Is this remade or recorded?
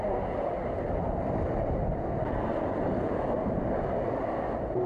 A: recorded